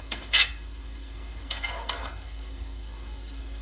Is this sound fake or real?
fake